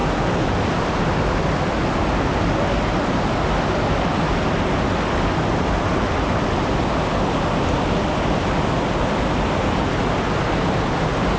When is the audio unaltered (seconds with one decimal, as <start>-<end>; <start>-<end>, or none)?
0.0-11.4